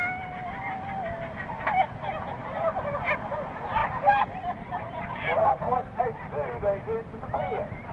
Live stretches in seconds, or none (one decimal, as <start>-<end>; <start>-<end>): 0.0-5.4; 6.0-7.9